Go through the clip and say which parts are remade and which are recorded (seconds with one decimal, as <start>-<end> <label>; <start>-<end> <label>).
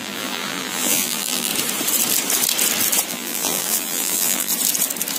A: 0.0-1.5 remade; 1.5-3.1 recorded; 3.1-4.5 remade; 4.5-5.2 recorded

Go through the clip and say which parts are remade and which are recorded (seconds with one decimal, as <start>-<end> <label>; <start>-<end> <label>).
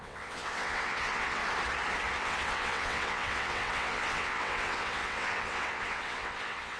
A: 0.0-1.4 remade; 1.4-2.2 recorded; 2.2-6.8 remade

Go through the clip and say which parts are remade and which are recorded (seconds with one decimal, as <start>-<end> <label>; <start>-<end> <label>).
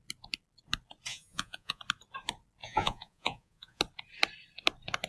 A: 0.0-1.1 recorded; 1.1-1.8 remade; 1.8-2.6 recorded; 2.6-3.8 remade; 3.8-5.1 recorded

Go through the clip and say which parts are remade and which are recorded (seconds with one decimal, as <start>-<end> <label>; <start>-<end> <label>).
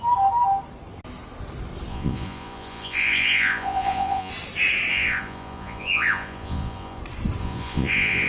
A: 0.0-1.9 recorded; 1.9-4.3 remade; 4.3-4.9 recorded; 4.9-7.0 remade; 7.0-7.4 recorded; 7.4-8.3 remade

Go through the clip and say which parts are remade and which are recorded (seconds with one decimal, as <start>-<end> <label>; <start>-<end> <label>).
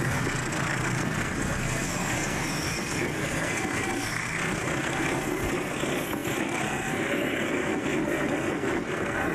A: 0.0-9.3 remade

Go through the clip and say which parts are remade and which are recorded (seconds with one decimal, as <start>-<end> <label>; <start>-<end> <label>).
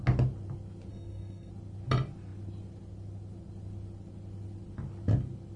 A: 0.0-0.9 recorded; 0.9-1.5 remade; 1.5-5.6 recorded